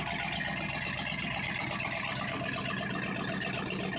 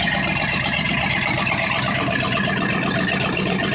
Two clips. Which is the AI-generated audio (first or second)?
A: second